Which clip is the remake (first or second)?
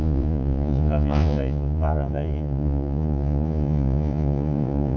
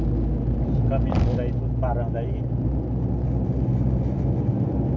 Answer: first